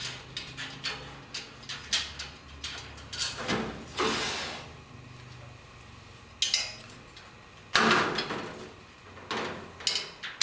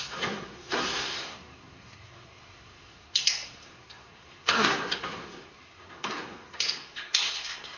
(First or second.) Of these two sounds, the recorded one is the first